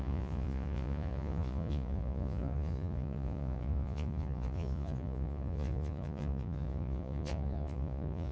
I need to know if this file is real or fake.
fake